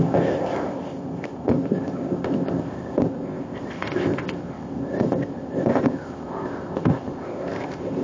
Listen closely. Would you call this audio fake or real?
fake